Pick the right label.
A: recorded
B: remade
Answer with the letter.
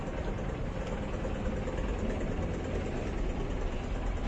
A